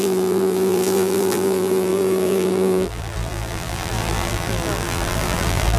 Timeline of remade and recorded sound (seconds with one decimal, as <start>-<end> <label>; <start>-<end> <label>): 0.0-5.8 remade

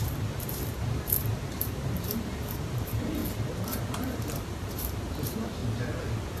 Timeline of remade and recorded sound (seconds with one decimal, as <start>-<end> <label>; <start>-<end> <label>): 0.0-3.2 remade; 3.2-3.8 recorded; 3.8-5.6 remade; 5.6-6.4 recorded

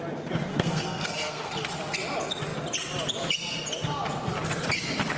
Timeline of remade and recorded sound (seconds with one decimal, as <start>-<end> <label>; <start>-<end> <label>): 0.0-0.5 recorded; 0.5-1.5 remade; 1.5-5.2 recorded

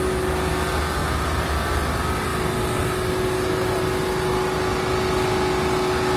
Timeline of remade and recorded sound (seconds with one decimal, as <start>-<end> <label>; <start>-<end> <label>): 0.0-6.2 recorded

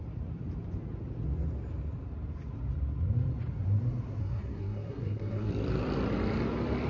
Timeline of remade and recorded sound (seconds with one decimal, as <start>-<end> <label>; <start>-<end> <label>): 0.0-4.2 recorded; 4.2-5.5 remade; 5.5-6.9 recorded

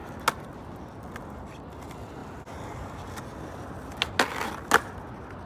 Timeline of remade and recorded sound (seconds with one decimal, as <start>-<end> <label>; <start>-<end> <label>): 0.0-5.5 recorded

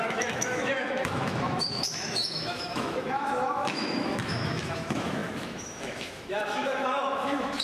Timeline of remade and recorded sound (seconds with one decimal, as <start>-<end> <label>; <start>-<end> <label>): 0.0-7.6 remade

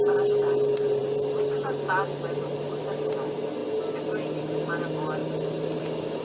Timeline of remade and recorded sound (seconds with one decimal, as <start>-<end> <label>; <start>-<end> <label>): 0.0-6.2 recorded